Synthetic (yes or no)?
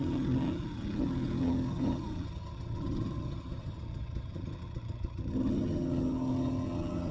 yes